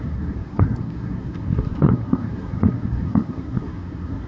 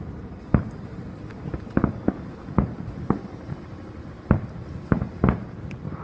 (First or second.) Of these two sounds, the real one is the second